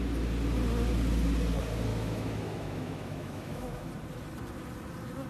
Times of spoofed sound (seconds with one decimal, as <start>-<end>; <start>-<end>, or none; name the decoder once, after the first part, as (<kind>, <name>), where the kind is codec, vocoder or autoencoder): 1.9-3.9 (autoencoder, DAC-VAE)